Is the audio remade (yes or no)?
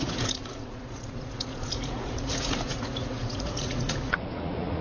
yes